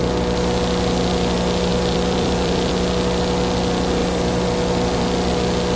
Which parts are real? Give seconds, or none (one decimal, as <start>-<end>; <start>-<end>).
0.0-1.7; 2.7-5.8